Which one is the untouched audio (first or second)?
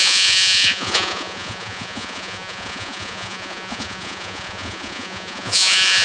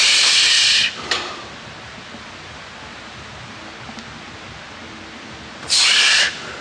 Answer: second